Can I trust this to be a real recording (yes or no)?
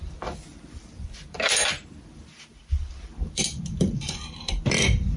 no